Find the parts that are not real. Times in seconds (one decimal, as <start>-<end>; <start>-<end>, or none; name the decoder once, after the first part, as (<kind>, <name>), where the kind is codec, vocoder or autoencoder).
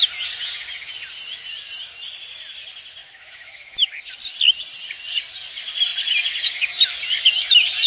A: 3.0-4.1 (autoencoder, DAC-VAE)